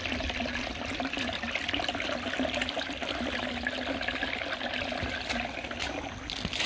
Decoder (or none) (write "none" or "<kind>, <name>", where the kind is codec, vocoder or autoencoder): none